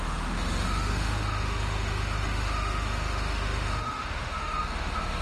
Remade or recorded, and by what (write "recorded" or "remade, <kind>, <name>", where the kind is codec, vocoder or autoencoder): remade, autoencoder, DAC-VAE